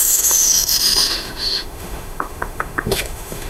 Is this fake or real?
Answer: fake